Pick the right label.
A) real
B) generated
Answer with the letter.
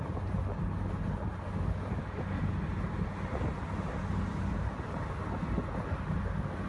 A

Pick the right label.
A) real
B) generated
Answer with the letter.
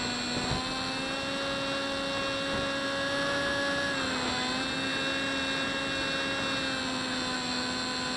A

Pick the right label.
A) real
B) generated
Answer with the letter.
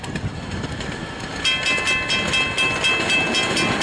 A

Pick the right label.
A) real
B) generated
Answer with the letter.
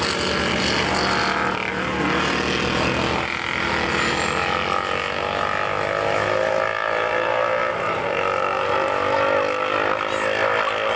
A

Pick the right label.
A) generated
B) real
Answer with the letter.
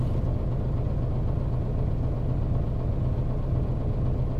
B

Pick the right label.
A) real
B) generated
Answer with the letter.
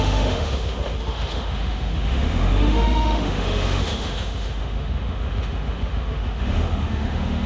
B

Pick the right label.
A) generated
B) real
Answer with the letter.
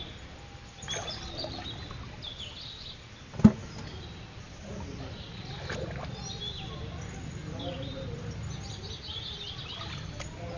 B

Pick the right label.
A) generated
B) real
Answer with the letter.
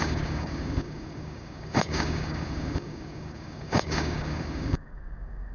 A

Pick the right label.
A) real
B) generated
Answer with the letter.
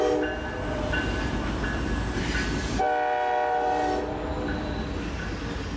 A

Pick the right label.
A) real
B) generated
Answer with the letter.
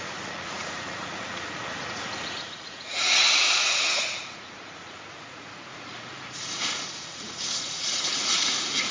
B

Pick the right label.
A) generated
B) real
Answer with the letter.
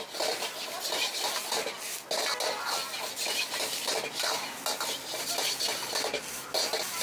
B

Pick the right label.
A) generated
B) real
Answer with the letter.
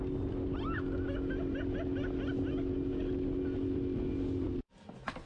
B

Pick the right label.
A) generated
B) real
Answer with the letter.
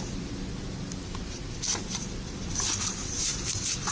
A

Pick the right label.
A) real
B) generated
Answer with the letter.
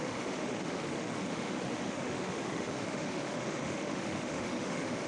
B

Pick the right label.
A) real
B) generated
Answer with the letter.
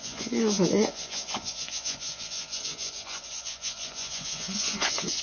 B